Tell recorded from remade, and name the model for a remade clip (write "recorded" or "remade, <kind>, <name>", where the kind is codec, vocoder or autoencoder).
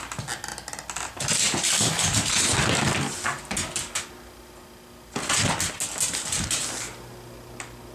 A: recorded